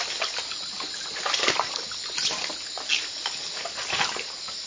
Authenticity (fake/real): real